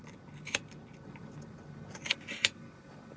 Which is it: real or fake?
real